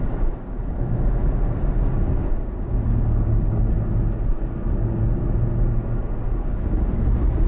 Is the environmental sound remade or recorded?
recorded